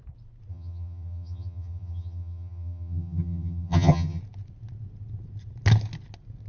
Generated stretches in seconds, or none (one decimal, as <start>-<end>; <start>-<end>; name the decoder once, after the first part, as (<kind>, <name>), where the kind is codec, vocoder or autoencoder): 0.5-4.2 (vocoder, HiFi-GAN)

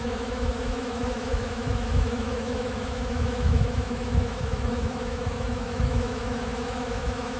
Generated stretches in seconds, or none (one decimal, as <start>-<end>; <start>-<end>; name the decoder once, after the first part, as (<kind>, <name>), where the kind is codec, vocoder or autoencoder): 0.0-7.4 (autoencoder, DAC-VAE)

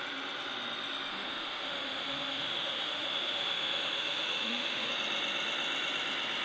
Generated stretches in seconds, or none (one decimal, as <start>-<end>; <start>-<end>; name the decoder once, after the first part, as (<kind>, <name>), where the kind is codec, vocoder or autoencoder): 1.1-4.9 (autoencoder, DAC-VAE)

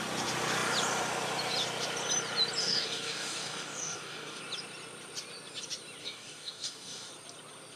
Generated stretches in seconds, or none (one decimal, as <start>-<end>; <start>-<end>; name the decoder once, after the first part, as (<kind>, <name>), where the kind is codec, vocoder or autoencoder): 2.6-4.4 (codec, DAC); 6.0-7.1

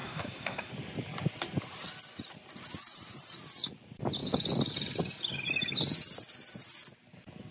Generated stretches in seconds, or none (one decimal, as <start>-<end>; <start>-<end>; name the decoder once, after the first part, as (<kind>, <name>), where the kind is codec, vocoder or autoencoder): 0.0-0.7 (codec, SNAC)